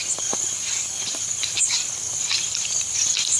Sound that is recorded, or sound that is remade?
recorded